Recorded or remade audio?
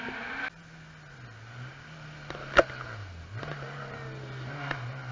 recorded